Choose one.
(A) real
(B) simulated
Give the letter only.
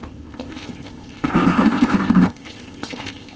B